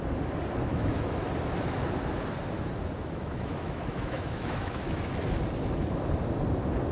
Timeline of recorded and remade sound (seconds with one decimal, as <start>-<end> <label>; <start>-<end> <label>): 0.0-0.7 recorded; 0.7-1.3 remade; 1.3-3.0 recorded; 3.0-5.1 remade; 5.1-6.9 recorded